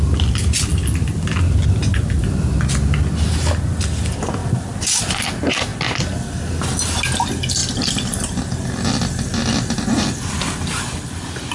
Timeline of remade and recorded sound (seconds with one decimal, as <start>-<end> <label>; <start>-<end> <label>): 0.0-4.4 recorded; 4.4-5.0 remade; 5.0-7.6 recorded; 7.6-11.5 remade